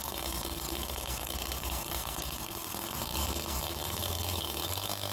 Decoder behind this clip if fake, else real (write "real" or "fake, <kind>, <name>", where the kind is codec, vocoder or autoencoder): fake, codec, SNAC